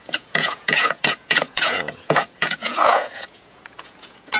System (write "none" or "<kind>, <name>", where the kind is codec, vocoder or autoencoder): vocoder, Vocos